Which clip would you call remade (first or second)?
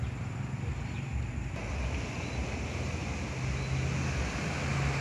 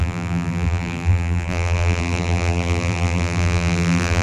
second